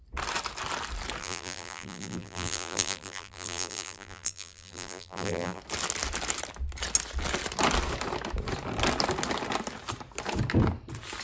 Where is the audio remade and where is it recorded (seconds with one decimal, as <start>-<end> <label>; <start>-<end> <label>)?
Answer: 0.0-1.2 recorded; 1.2-5.6 remade; 5.6-11.2 recorded